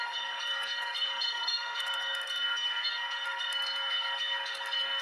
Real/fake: fake